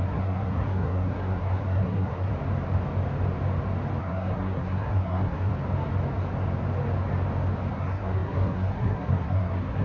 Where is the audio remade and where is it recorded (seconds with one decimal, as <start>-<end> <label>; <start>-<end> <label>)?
0.0-2.3 remade; 2.3-4.0 recorded; 4.0-5.5 remade; 5.5-7.7 recorded; 7.7-9.8 remade